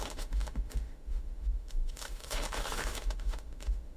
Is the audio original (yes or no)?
no